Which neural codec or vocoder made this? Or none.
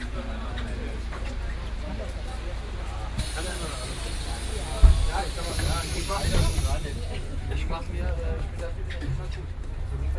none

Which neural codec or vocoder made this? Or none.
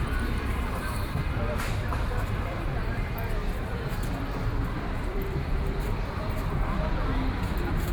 vocoder, BigVGAN v2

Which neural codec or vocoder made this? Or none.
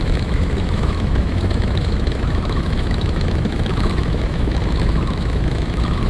autoencoder, DAC-VAE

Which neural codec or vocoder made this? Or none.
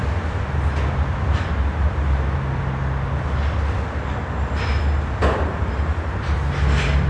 none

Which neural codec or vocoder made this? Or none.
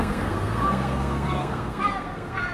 codec, SNAC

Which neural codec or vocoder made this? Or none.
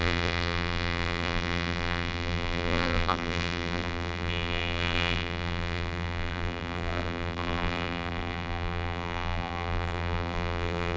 vocoder, BigVGAN v2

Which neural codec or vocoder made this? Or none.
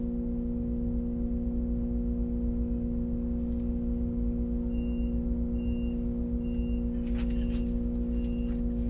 none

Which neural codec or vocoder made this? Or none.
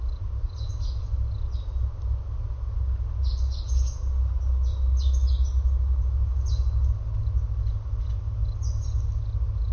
none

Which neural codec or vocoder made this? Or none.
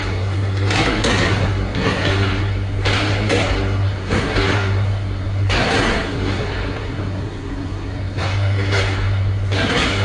codec, SNAC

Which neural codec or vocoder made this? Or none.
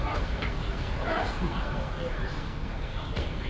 codec, SNAC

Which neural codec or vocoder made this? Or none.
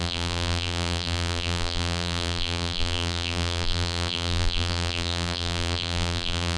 vocoder, BigVGAN v2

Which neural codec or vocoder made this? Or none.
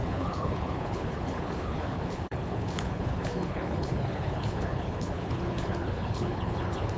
codec, HILCodec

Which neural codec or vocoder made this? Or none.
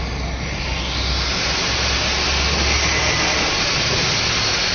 none